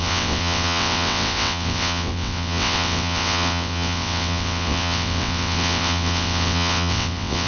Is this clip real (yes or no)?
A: no